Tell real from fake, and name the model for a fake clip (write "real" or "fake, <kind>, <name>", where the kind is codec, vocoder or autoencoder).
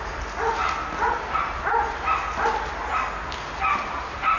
real